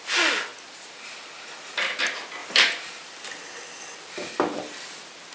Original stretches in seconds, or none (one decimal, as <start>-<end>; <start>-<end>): 0.0-0.5; 1.5-2.4; 3.4-5.3